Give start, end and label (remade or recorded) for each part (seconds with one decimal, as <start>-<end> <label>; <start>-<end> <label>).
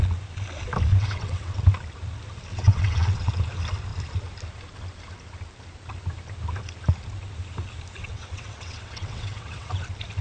0.0-0.9 recorded; 0.9-1.6 remade; 1.6-2.5 recorded; 2.5-3.3 remade; 3.3-8.0 recorded; 8.0-9.7 remade; 9.7-10.2 recorded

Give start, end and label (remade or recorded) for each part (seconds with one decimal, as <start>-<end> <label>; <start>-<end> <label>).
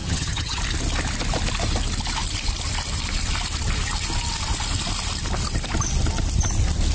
0.0-0.6 remade; 0.6-6.9 recorded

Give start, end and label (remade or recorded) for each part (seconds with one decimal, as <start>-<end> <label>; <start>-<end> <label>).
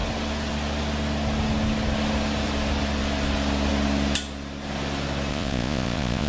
0.0-5.3 recorded; 5.3-6.3 remade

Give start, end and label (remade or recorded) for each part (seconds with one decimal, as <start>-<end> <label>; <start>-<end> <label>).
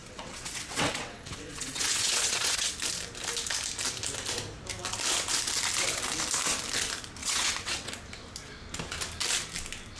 0.0-2.7 remade; 2.7-7.2 recorded; 7.2-7.9 remade; 7.9-10.0 recorded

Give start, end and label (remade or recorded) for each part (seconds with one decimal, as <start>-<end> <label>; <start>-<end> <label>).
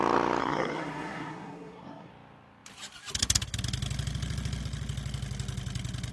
0.0-0.4 recorded; 0.4-2.1 remade; 2.1-6.1 recorded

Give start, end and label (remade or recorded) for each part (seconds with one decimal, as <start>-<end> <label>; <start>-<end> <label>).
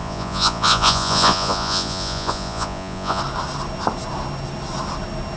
0.0-3.2 remade; 3.2-5.4 recorded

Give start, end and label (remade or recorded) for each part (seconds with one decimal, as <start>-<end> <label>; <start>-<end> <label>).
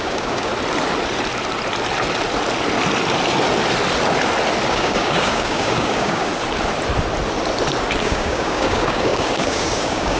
0.0-0.5 remade; 0.5-4.7 recorded; 4.7-6.3 remade; 6.3-8.0 recorded; 8.0-10.2 remade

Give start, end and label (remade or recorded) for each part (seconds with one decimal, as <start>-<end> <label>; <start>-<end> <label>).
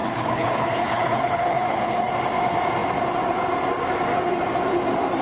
0.0-2.1 remade; 2.1-5.2 recorded